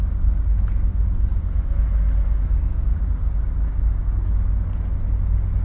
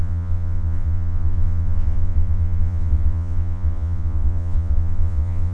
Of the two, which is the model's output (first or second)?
second